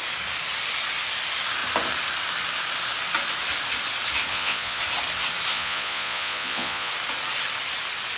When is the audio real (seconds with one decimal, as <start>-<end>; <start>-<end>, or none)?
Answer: 0.0-4.3; 4.8-5.5; 6.9-8.2